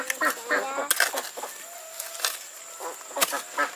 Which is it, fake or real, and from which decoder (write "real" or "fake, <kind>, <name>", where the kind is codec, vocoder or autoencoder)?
real